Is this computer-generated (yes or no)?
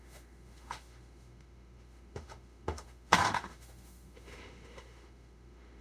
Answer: yes